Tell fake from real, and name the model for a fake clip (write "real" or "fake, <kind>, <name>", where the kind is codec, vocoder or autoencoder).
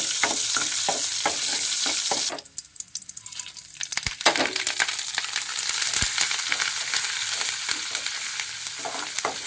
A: fake, vocoder, BigVGAN v2